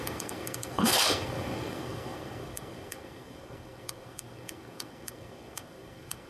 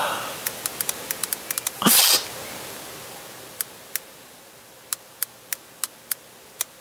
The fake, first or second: first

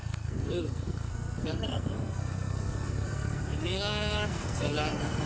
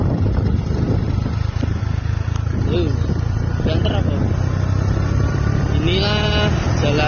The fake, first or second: first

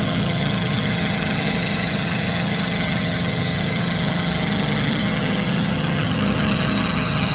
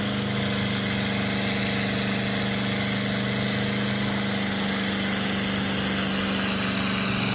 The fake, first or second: first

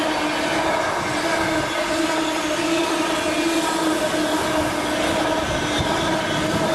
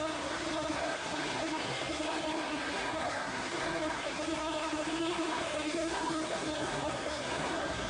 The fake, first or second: second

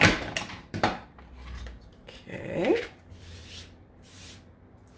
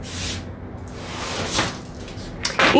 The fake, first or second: first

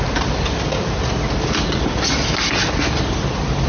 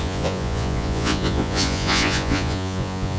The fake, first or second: second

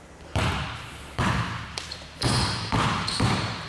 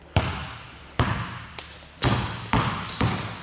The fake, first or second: first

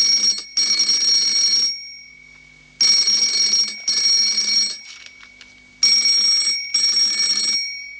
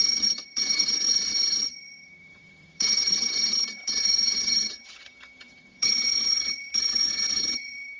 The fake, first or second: second